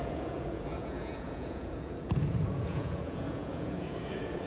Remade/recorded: remade